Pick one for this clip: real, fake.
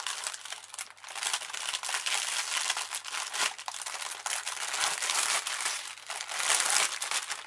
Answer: real